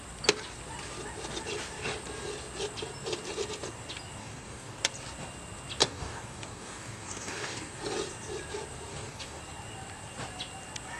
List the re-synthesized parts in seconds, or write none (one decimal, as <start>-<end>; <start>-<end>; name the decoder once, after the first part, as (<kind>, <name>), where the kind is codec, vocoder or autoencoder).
4.2-4.8 (codec, DAC); 5.8-7.8; 8.9-9.4